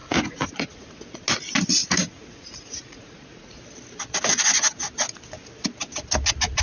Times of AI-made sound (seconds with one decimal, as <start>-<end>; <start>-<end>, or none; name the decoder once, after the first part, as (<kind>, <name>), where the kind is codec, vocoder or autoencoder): 0.0-1.0 (vocoder, Vocos); 1.8-3.6